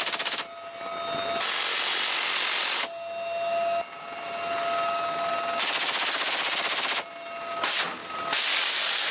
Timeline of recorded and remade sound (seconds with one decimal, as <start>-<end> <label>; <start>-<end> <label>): 0.0-9.1 recorded